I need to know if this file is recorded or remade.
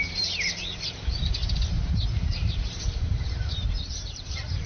remade